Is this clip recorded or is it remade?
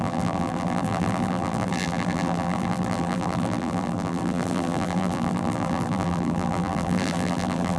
remade